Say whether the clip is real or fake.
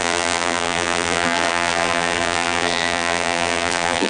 fake